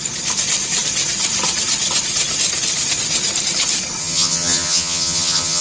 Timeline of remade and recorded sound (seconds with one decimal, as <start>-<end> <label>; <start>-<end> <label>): 0.0-4.0 recorded; 4.0-5.6 remade